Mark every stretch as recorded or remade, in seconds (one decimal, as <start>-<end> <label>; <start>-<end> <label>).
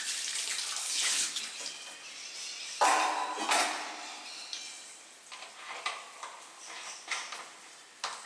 0.0-0.8 recorded; 0.8-1.4 remade; 1.4-8.3 recorded